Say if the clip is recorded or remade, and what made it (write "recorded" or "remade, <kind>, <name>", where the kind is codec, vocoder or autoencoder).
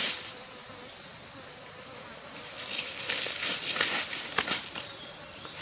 recorded